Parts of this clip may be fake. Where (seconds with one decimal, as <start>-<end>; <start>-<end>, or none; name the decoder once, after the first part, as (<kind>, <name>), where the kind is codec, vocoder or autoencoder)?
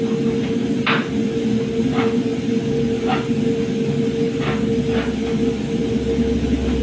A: none